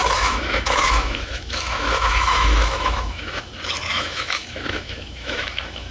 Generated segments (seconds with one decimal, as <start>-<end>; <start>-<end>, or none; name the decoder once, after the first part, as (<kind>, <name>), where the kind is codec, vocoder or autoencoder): 0.0-3.5 (autoencoder, DAC-VAE); 3.9-5.9